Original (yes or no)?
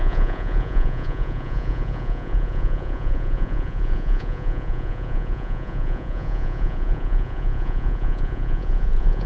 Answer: no